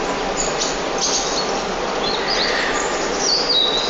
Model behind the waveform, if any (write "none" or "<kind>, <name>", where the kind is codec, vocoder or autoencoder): none